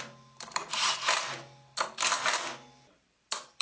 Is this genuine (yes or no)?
no